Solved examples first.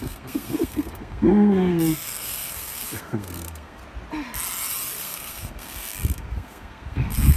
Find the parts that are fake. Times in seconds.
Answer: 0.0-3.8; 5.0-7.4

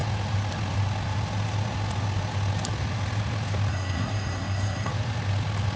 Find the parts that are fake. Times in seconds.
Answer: 3.7-4.9